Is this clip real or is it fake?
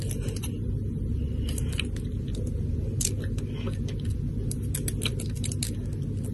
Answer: real